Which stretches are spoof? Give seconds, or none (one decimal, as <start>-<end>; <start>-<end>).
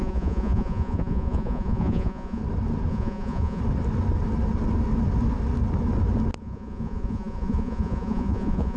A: 0.0-2.4; 2.9-3.6; 6.4-8.8